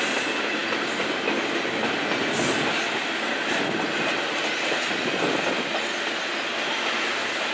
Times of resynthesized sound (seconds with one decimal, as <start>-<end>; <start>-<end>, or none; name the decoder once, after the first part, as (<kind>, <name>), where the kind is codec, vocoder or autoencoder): none